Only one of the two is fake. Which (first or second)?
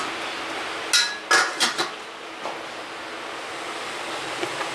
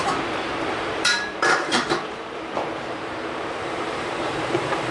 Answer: second